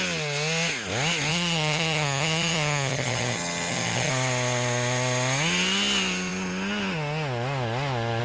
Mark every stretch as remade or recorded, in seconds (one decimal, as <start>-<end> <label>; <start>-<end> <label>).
0.0-1.3 recorded; 1.3-4.1 remade; 4.1-8.2 recorded